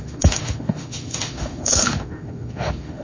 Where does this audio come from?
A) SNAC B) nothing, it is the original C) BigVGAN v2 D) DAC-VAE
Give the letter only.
D